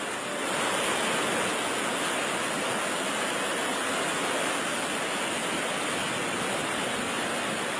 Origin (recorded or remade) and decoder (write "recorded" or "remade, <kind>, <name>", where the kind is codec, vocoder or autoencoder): recorded